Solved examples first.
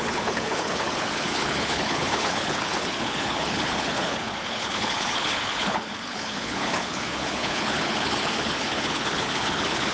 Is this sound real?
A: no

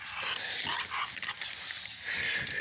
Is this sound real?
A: yes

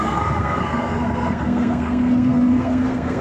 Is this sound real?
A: no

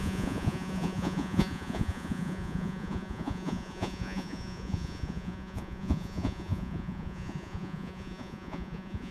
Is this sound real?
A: no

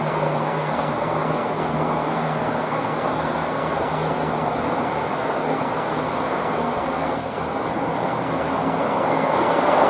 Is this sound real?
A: no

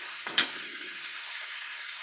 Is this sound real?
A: no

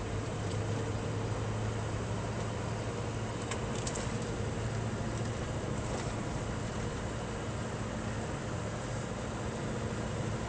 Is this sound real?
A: yes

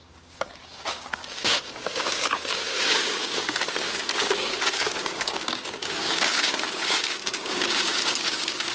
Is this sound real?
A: no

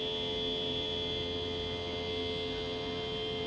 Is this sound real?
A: yes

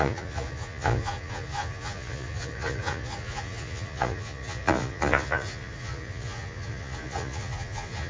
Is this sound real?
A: no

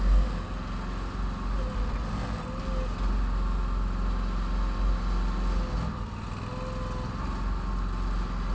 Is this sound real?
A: yes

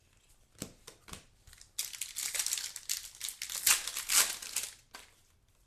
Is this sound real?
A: yes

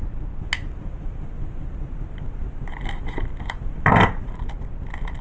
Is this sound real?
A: yes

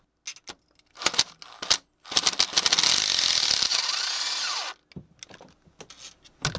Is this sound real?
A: yes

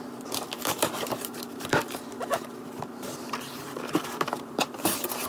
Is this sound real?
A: no